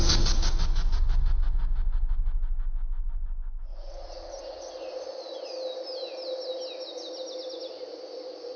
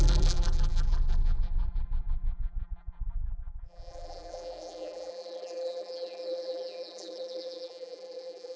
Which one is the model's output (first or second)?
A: second